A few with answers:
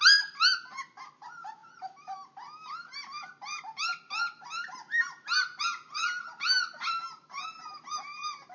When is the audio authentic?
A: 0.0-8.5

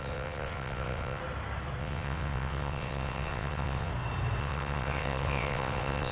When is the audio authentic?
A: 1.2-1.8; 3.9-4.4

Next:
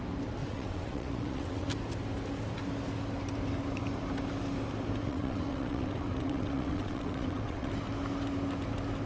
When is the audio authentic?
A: 0.0-0.4; 1.7-5.0; 7.7-9.1

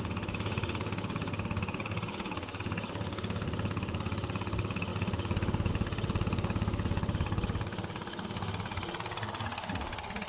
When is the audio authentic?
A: 0.0-10.3